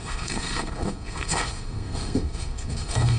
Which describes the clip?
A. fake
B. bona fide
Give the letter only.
A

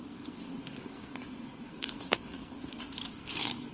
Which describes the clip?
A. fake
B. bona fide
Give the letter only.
A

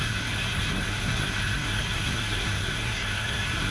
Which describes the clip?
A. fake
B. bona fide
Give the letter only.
A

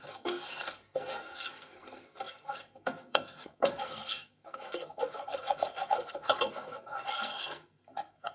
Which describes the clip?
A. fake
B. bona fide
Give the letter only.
A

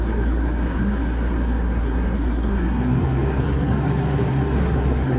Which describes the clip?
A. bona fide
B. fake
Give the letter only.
B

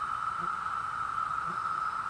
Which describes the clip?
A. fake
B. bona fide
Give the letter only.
B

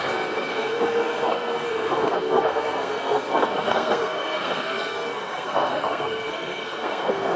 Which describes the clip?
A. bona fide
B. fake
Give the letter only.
B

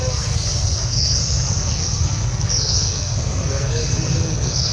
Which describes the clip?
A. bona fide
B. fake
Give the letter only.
B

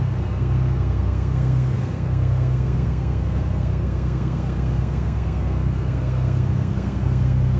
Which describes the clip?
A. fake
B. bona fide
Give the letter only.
A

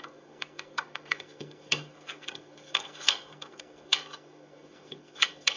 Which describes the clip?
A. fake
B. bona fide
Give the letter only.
A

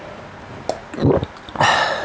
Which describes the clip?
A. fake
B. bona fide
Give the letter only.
B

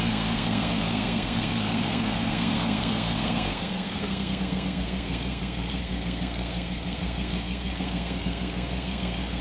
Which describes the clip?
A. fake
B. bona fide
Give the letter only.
A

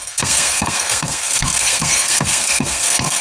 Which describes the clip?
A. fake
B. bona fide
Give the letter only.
A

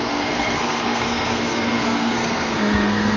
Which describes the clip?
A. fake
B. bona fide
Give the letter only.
A